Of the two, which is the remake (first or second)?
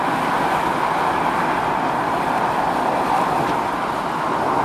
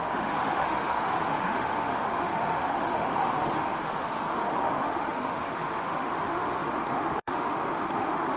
second